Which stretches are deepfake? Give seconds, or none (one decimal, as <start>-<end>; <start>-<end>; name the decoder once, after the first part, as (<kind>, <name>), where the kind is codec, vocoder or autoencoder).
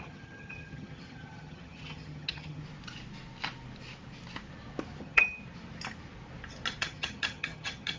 0.0-2.6 (vocoder, HiFi-GAN); 5.0-5.4; 6.8-8.0